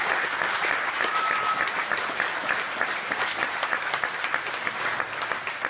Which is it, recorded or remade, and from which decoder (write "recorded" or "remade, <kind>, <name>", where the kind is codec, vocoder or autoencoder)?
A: recorded